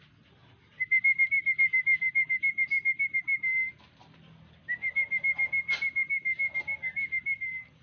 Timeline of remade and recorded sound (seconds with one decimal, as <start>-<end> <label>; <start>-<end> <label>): 0.0-7.8 recorded